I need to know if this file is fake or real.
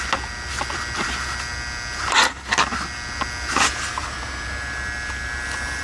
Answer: real